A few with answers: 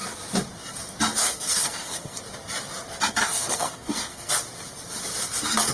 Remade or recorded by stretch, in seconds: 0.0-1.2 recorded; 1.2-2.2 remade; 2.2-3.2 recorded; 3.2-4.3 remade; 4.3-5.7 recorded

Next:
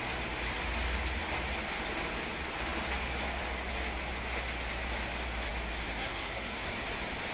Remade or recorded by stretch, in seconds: 0.0-5.9 recorded; 5.9-6.7 remade; 6.7-7.3 recorded

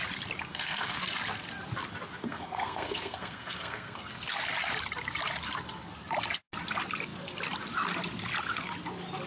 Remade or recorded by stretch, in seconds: 0.0-0.5 recorded; 0.5-1.0 remade; 1.0-2.2 recorded; 2.2-4.1 remade; 4.1-9.3 recorded

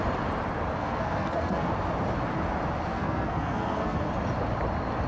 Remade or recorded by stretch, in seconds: 0.0-0.8 recorded; 0.8-1.7 remade; 1.7-2.9 recorded; 2.9-4.1 remade; 4.1-5.1 recorded

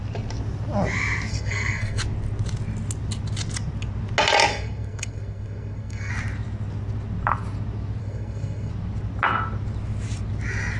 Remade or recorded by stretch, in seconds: 0.0-1.3 recorded; 1.3-2.0 remade; 2.0-4.5 recorded; 4.5-6.1 remade; 6.1-8.0 recorded; 8.0-8.7 remade; 8.7-10.8 recorded

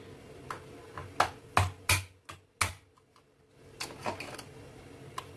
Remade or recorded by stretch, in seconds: 0.0-5.4 recorded

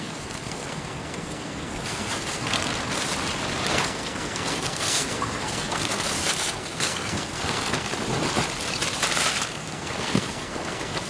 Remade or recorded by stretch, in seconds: 0.0-2.7 remade; 2.7-3.7 recorded; 3.7-7.9 remade; 7.9-9.3 recorded; 9.3-11.1 remade